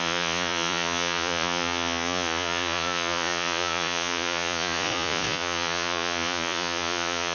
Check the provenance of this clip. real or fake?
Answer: fake